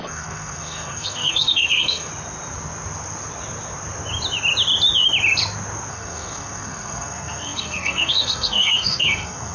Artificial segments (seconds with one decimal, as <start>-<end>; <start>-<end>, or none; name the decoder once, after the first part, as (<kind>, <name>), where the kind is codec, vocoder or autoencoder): 0.0-2.1 (codec, SNAC); 5.9-9.5